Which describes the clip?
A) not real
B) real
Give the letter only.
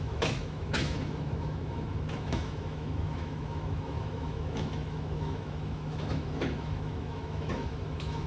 A